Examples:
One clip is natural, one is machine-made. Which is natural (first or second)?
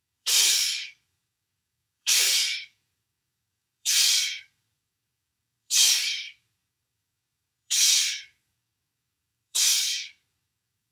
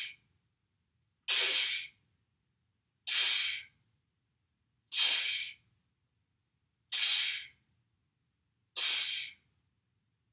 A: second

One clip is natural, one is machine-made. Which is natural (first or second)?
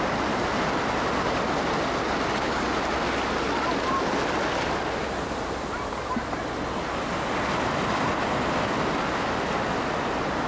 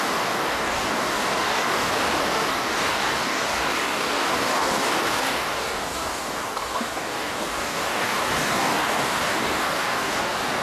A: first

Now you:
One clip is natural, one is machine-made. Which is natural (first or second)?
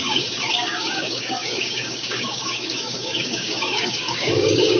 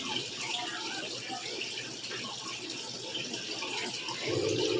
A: second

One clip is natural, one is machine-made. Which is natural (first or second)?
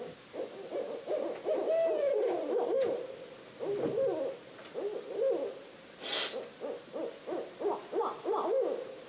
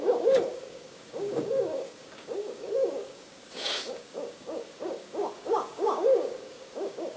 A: first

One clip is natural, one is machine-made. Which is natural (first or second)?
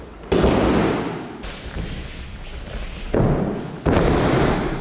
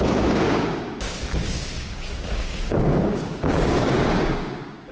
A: first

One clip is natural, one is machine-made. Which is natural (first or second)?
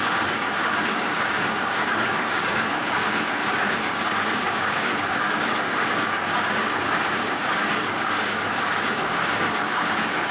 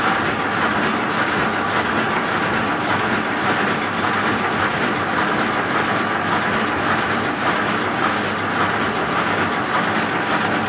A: second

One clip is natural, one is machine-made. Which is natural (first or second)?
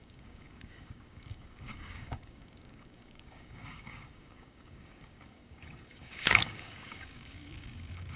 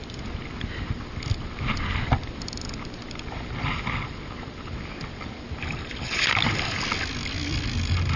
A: second